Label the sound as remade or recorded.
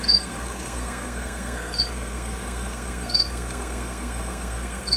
remade